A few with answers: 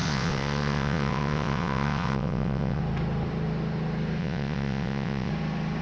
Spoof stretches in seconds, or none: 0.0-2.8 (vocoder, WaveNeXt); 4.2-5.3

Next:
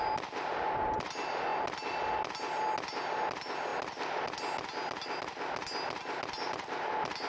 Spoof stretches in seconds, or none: none

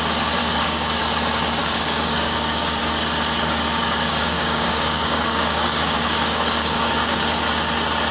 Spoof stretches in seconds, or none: 0.4-1.0 (codec, DAC); 1.6-2.8; 3.7-7.3

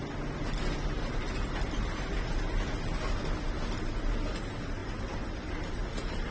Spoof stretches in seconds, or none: 4.8-6.3 (vocoder, BigVGAN v2)

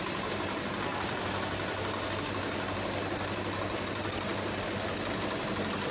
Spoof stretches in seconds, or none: none

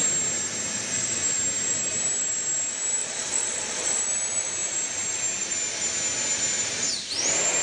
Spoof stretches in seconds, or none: 3.0-4.0 (vocoder, Vocos)

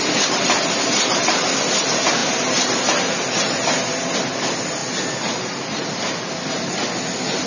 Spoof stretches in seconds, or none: none

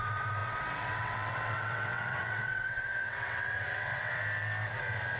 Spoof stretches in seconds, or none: 0.0-4.2 (vocoder, WaveNeXt)